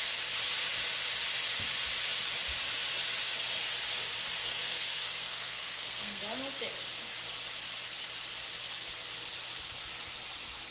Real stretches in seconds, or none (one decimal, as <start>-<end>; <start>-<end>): 0.0-4.4; 6.2-10.7